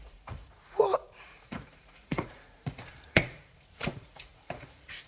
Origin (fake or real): fake